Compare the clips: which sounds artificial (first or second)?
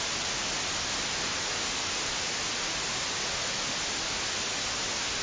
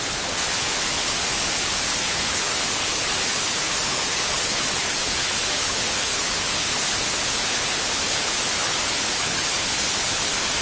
second